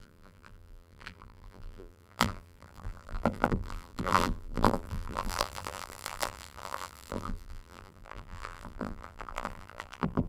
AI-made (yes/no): yes